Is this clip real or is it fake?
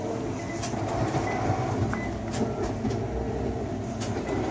real